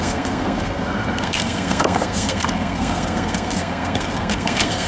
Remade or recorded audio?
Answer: remade